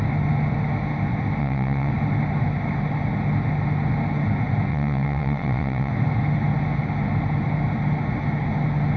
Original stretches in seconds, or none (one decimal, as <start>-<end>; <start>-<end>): 0.0-1.4; 1.9-4.7; 5.9-9.0

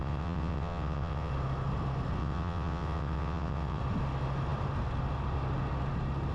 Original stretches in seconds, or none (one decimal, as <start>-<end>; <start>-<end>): 1.3-2.2; 3.8-6.3

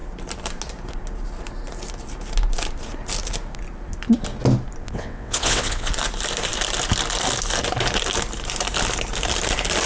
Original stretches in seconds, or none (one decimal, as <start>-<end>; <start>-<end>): 0.0-4.8; 5.9-9.9

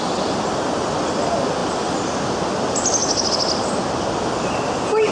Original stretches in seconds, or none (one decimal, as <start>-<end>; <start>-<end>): 0.0-5.1

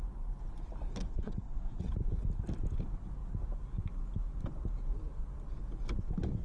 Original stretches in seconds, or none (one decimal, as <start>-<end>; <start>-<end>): 0.0-1.1; 1.9-6.4

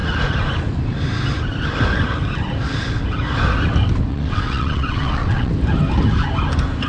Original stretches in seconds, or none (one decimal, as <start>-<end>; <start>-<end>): 0.0-4.1; 5.5-6.9

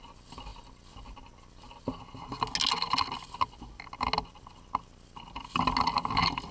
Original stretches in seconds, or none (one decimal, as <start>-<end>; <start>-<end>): 0.0-6.5

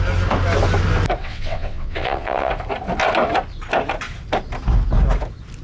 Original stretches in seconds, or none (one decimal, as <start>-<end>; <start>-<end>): 0.0-1.2; 2.5-5.6